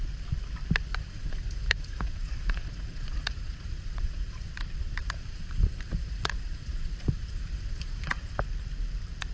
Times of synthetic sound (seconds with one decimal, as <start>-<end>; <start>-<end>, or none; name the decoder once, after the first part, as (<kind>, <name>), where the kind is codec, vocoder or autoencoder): 0.9-4.5 (vocoder, Vocos); 5.0-8.3